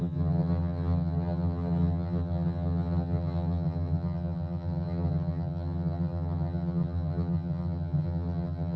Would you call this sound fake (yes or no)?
yes